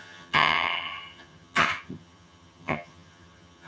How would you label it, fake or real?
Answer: fake